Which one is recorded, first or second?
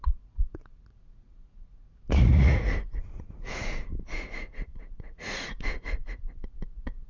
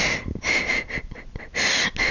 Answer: second